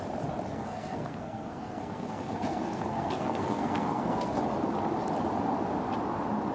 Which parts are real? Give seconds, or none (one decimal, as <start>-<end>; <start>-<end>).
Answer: 0.0-0.5; 4.4-6.5